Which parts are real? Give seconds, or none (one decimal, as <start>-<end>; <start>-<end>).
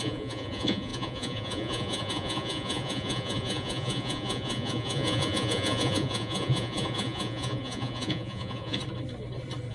8.8-9.7